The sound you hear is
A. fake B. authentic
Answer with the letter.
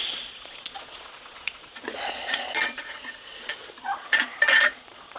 A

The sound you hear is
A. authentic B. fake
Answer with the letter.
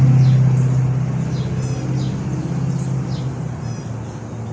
A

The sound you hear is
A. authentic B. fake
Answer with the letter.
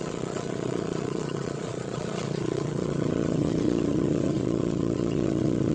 B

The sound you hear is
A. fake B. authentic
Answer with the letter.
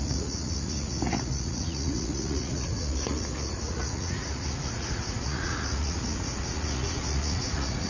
A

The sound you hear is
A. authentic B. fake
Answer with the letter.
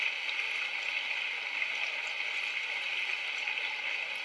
A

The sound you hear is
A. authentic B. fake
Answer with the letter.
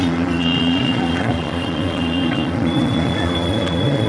B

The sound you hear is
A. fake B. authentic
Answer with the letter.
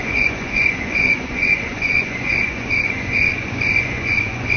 A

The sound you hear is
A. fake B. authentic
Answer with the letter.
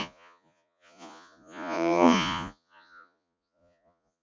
A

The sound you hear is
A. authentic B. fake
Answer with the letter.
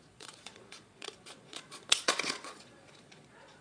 B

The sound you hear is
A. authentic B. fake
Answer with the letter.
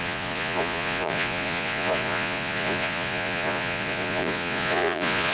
B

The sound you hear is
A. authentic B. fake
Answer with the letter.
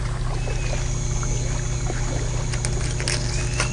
A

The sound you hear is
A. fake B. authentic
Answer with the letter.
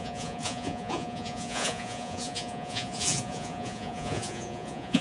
A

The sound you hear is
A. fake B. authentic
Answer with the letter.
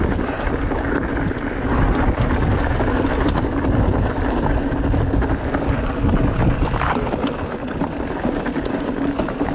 B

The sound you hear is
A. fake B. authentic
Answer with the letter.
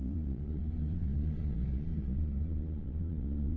A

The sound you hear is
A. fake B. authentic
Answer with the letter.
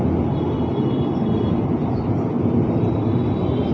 B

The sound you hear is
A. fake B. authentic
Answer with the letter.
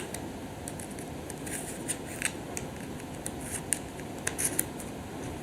B